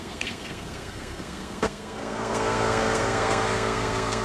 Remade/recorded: remade